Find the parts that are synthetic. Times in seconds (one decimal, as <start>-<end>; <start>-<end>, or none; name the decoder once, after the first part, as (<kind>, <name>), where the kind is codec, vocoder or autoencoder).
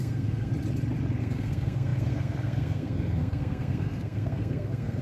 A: 0.0-0.5 (codec, SNAC); 1.2-5.0